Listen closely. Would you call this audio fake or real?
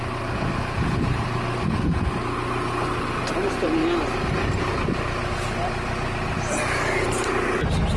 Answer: real